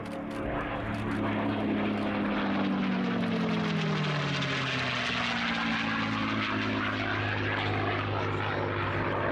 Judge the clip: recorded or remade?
recorded